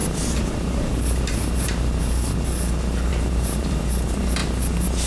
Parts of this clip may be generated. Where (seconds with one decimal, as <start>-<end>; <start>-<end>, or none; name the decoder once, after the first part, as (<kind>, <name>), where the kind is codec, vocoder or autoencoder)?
0.0-2.0 (vocoder, BigVGAN v2); 3.1-3.8